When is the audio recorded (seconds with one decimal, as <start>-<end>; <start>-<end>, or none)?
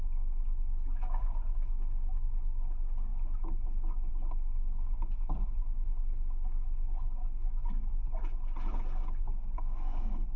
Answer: 0.0-10.4